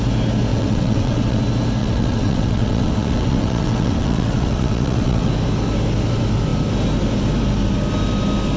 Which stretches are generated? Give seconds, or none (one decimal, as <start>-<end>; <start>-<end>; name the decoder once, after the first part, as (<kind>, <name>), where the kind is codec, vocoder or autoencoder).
0.5-1.4 (vocoder, WaveNeXt); 1.8-5.3